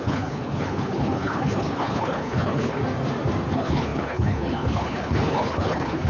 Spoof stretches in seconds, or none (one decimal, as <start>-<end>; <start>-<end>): 0.0-2.8; 3.5-6.1